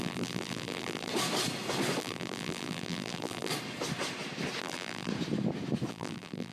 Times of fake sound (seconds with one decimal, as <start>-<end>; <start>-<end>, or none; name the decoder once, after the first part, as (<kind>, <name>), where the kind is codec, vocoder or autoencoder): 0.0-1.1 (vocoder, BigVGAN v2); 2.0-3.5; 4.6-5.1; 5.9-6.5